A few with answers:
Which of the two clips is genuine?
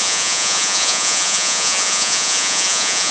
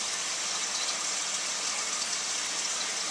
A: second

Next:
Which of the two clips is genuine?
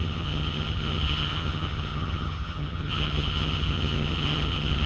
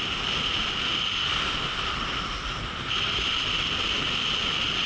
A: second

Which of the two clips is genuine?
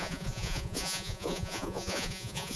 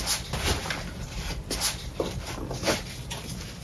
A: second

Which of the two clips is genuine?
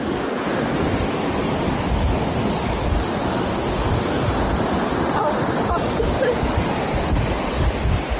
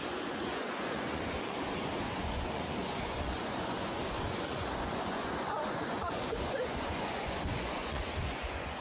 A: first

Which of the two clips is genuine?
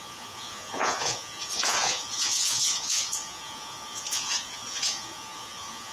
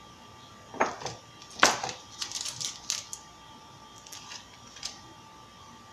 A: second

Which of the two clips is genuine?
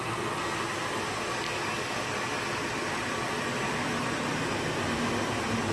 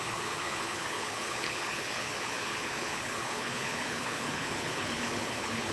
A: first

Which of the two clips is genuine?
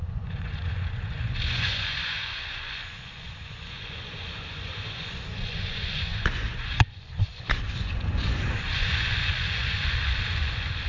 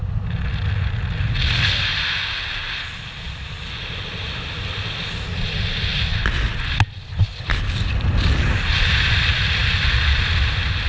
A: second